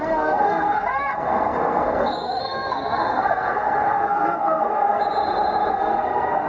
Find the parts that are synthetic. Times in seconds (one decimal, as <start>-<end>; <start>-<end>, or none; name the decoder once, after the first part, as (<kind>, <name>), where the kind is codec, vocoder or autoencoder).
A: 0.0-5.0 (codec, SNAC); 5.7-6.5